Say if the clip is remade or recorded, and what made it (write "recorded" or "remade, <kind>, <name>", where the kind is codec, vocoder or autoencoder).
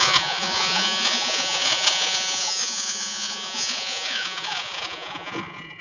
remade, vocoder, Vocos